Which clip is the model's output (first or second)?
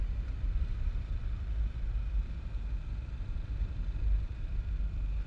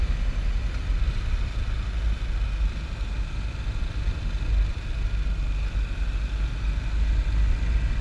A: first